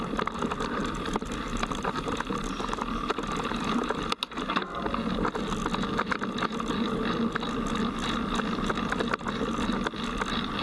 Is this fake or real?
real